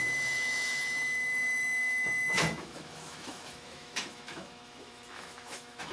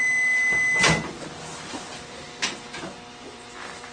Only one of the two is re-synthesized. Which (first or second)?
first